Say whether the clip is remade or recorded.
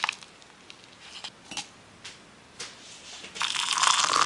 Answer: recorded